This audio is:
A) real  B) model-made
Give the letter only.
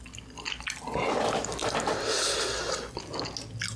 A